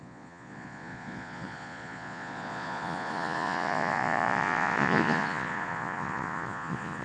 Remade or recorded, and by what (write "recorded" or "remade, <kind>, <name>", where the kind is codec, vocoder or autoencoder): remade, vocoder, Vocos